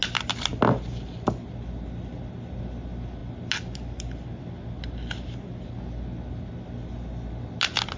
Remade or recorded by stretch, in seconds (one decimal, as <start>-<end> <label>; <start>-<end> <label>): 0.0-8.0 recorded